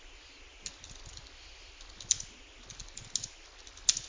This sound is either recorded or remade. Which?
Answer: recorded